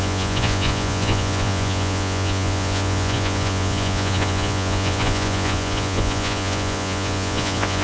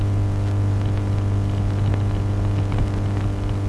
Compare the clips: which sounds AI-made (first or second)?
first